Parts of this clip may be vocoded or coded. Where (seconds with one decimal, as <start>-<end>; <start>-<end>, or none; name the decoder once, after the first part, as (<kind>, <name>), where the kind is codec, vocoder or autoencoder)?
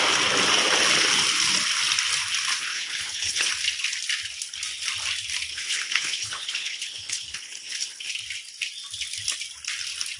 2.6-3.5 (codec, HILCodec); 5.5-8.1